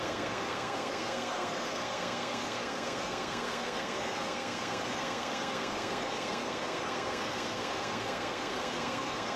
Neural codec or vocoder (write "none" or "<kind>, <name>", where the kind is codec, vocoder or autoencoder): codec, SNAC